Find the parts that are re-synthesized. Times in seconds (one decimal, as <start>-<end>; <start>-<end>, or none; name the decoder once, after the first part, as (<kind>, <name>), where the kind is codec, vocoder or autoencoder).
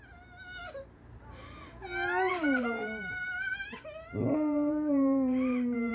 2.3-5.9 (vocoder, BigVGAN v2)